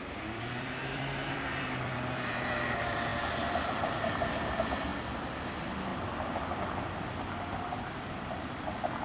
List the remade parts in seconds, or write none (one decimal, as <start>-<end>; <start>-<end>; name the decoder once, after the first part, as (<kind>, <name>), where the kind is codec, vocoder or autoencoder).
0.0-4.9 (vocoder, BigVGAN v2); 5.4-5.9; 7.9-9.0

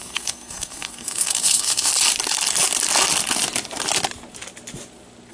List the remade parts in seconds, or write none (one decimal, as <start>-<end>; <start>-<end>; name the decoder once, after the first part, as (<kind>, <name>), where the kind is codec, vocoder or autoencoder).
0.0-1.9 (codec, SNAC)

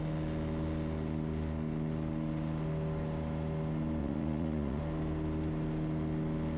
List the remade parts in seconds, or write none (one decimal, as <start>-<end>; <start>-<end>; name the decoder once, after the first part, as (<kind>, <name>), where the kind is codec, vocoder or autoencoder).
4.0-4.8 (vocoder, Vocos)

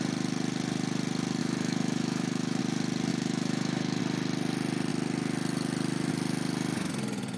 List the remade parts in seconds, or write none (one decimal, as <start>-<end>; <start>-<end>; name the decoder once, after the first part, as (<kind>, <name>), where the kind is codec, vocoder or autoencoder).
1.4-2.6 (autoencoder, DAC-VAE); 3.1-4.0

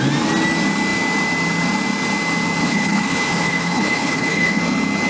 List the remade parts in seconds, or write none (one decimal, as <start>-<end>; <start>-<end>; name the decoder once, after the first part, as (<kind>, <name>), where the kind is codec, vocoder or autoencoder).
2.6-4.6 (codec, HILCodec)

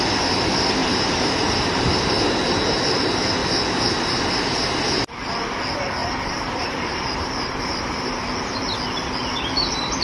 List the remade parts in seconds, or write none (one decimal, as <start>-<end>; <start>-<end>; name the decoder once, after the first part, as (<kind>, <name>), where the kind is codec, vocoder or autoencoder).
0.8-1.8 (vocoder, BigVGAN v2); 6.0-8.2

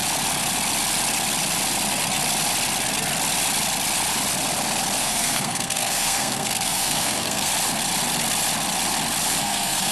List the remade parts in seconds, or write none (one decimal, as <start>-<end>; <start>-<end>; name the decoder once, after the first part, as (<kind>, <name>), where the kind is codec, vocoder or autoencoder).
5.0-7.5 (codec, SNAC); 9.4-9.9

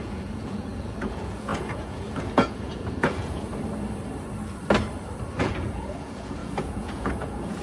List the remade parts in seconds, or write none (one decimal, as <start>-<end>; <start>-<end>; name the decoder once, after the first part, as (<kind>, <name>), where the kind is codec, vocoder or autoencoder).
0.0-3.5 (vocoder, Vocos); 5.4-7.6